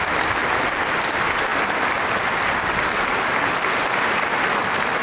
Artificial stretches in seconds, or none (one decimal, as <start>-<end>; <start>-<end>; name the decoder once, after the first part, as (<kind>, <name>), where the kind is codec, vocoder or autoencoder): none